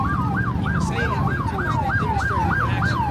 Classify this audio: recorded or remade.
recorded